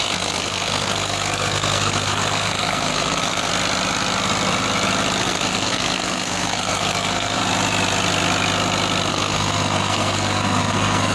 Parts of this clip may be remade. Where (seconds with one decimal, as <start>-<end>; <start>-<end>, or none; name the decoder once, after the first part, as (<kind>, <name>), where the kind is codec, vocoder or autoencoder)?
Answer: 0.0-3.5 (codec, SNAC); 5.2-7.4; 9.1-11.1